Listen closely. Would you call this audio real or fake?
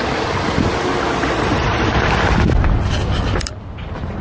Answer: real